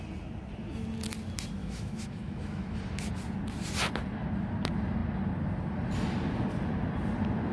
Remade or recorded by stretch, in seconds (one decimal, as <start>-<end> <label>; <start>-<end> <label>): 0.0-1.6 recorded; 1.6-2.8 remade; 2.8-7.5 recorded